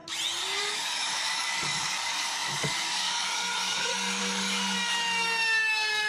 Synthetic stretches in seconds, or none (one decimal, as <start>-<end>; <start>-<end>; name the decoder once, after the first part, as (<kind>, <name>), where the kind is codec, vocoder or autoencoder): 0.6-6.1 (codec, DAC)